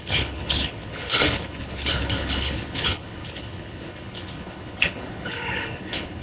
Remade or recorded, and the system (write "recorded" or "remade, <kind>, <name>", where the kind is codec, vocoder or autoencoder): remade, codec, HILCodec